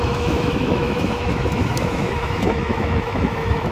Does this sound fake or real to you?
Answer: fake